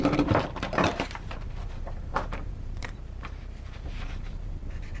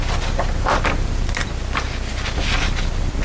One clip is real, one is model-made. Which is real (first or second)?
second